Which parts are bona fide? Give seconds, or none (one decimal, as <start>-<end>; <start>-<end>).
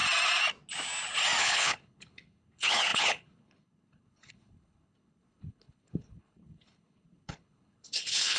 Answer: 0.0-1.4